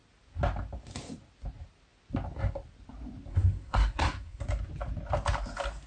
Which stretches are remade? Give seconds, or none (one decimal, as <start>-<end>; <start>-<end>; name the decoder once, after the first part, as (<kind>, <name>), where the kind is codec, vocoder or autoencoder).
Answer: 3.3-4.4 (codec, SNAC)